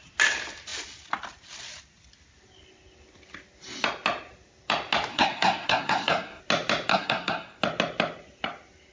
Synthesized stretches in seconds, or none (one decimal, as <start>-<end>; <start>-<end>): 5.1-6.4; 6.9-7.6